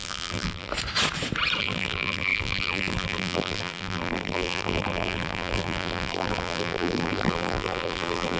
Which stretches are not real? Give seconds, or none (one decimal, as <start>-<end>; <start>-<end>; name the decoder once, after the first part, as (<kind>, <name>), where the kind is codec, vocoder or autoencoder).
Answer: 0.0-0.7 (vocoder, BigVGAN v2); 1.6-8.4